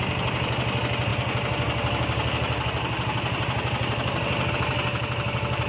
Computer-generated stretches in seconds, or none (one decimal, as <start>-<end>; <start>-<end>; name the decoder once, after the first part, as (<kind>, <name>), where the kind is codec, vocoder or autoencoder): none